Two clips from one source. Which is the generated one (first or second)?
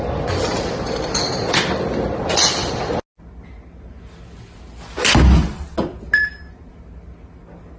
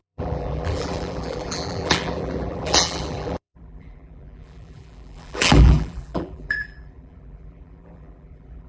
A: second